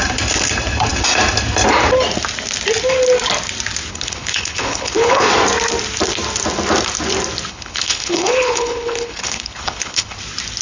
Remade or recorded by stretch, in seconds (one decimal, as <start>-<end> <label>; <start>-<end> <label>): 0.0-3.9 recorded; 3.9-5.3 remade; 5.3-7.5 recorded; 7.5-10.2 remade; 10.2-10.6 recorded